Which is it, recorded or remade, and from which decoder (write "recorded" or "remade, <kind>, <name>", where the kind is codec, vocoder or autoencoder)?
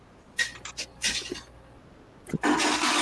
recorded